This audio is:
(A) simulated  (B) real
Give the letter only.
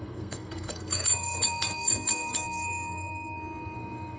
A